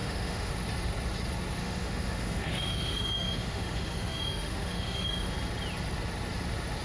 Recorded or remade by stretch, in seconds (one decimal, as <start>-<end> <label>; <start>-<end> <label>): 0.0-0.5 remade; 0.5-1.6 recorded; 1.6-5.3 remade; 5.3-6.8 recorded